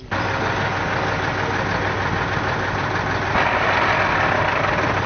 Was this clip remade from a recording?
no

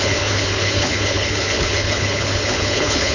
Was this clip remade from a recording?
yes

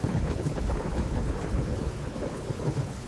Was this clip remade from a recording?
yes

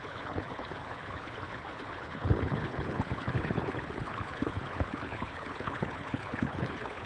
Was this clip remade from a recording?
yes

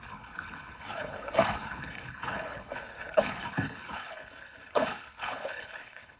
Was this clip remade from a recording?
yes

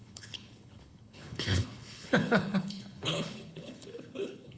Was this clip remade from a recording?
yes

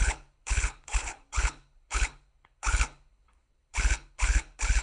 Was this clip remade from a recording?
yes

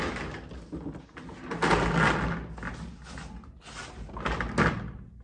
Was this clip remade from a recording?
no